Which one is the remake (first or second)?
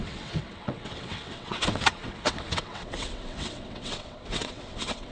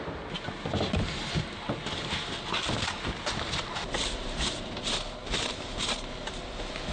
first